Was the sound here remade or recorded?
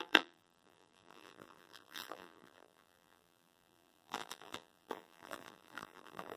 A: remade